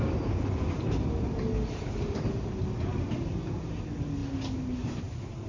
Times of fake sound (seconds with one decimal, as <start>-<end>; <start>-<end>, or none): none